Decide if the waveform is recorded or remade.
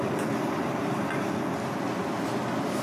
recorded